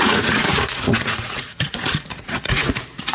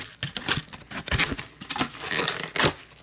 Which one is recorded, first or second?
second